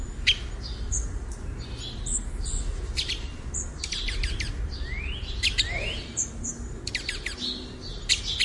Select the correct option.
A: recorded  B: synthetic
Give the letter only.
A